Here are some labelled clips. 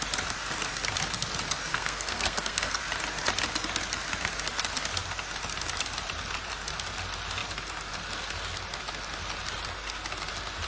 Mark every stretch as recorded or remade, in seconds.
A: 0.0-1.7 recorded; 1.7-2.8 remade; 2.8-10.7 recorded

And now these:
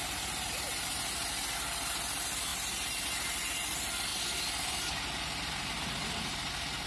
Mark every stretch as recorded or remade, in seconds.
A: 0.0-6.9 recorded

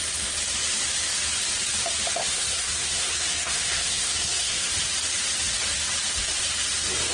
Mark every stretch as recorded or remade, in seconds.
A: 0.0-2.2 recorded; 2.2-4.7 remade; 4.7-7.1 recorded

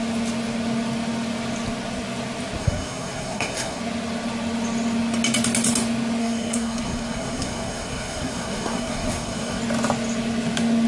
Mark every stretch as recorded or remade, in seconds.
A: 0.0-2.6 recorded; 2.6-3.8 remade; 3.8-6.2 recorded; 6.2-9.6 remade; 9.6-10.9 recorded

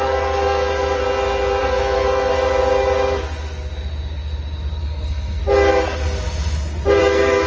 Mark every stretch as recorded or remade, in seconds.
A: 0.0-1.0 remade; 1.0-1.6 recorded; 1.6-2.3 remade; 2.3-4.8 recorded; 4.8-5.4 remade; 5.4-7.0 recorded; 7.0-7.5 remade

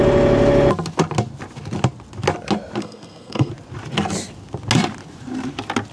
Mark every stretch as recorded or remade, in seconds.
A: 0.0-2.8 recorded; 2.8-3.5 remade; 3.5-5.9 recorded